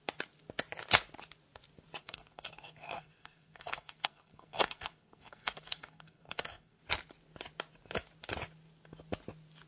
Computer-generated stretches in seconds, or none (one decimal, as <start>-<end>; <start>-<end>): 2.0-6.8